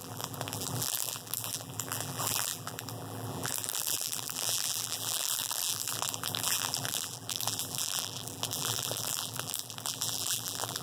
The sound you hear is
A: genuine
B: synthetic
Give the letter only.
B